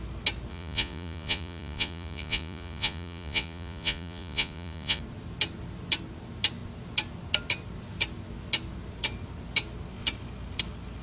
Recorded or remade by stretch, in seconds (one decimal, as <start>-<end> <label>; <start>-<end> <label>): 0.0-0.5 recorded; 0.5-5.0 remade; 5.0-11.0 recorded